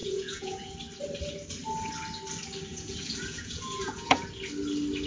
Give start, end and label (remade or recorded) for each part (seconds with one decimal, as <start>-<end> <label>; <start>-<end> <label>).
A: 0.0-0.7 remade; 0.7-2.7 recorded; 2.7-4.3 remade; 4.3-5.1 recorded